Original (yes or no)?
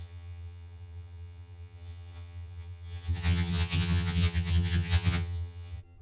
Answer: no